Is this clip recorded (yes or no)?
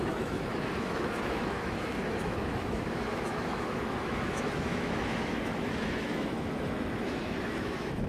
no